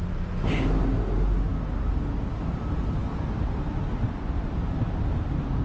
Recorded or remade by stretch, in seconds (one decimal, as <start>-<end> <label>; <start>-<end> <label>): 0.0-5.6 recorded